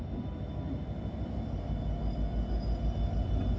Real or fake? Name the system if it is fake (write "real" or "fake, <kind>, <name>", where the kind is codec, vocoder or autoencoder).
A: real